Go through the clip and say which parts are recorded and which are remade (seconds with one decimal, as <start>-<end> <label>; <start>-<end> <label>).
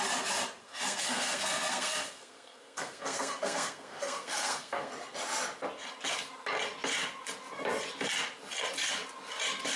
0.0-0.6 recorded; 0.6-4.9 remade; 4.9-9.8 recorded